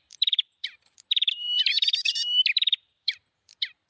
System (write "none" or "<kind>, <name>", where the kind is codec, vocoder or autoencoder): vocoder, BigVGAN v2